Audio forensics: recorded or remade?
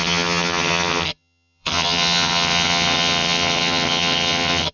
remade